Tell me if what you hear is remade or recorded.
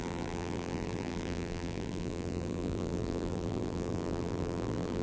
remade